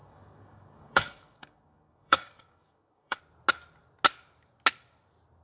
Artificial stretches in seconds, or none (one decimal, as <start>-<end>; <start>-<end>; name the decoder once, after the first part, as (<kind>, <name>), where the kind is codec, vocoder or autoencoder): 0.0-3.2 (codec, DAC)